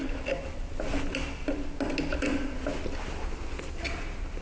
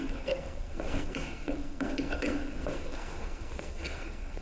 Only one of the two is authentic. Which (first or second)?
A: first